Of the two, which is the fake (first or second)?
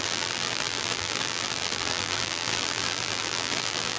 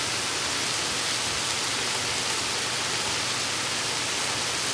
first